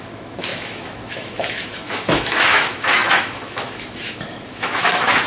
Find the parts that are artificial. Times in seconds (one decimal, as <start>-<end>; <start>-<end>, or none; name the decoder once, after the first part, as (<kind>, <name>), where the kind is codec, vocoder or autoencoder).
0.0-5.3 (autoencoder, DAC-VAE)